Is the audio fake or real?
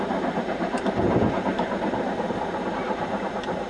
fake